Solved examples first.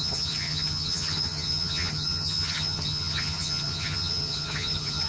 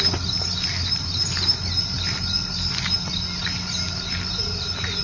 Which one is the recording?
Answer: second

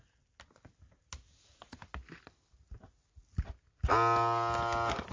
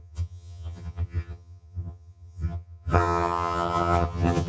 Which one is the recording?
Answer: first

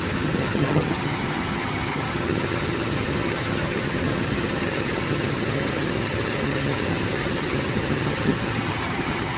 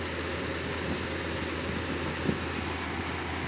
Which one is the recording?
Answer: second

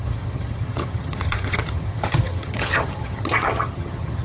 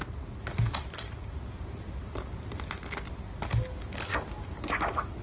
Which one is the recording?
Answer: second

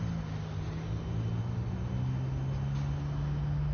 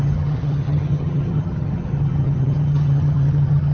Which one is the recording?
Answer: first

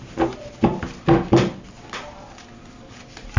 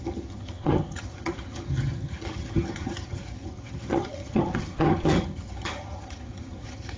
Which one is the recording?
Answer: first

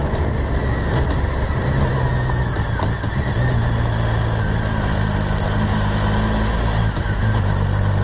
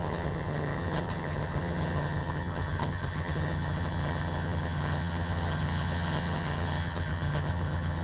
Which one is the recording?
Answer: first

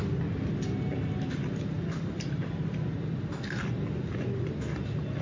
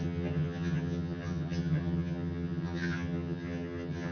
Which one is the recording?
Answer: first